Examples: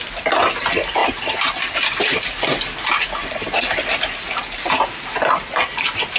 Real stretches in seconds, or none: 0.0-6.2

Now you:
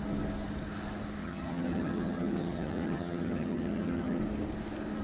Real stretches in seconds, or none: 0.0-1.2; 4.2-5.0

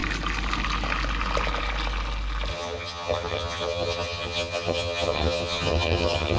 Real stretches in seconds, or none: 0.0-2.5

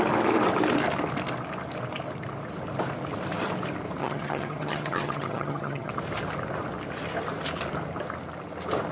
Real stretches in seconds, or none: 0.0-4.0; 5.9-8.9

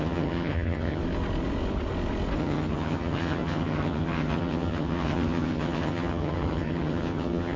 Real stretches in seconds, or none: 1.0-2.4

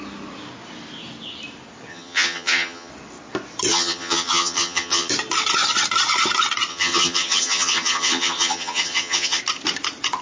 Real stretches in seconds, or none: 0.0-1.9; 2.9-3.7; 5.1-6.7; 9.4-10.2